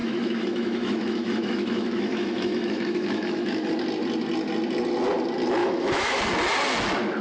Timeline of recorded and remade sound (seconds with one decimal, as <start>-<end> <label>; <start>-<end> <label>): 0.0-3.7 remade; 3.7-5.6 recorded; 5.6-6.2 remade; 6.2-7.2 recorded